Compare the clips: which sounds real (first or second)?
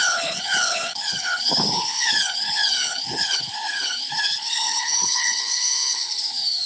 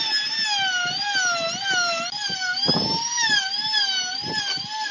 second